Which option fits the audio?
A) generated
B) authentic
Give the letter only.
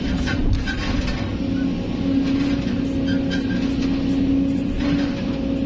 B